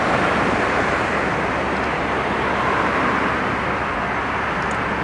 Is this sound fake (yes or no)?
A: no